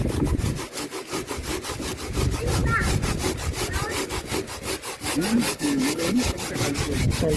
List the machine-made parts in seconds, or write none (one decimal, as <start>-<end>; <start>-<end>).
5.5-6.4